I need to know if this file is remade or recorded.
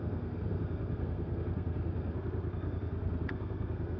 remade